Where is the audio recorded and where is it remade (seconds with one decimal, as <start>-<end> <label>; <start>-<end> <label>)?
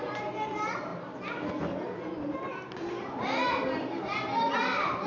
0.0-5.1 recorded